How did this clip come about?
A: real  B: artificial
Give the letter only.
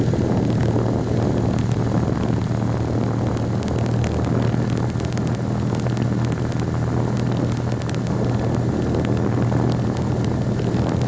A